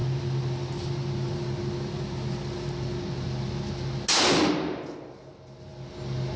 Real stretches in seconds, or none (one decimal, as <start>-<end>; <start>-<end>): 0.0-6.4